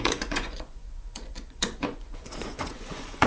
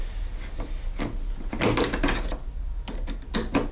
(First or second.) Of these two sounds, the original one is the second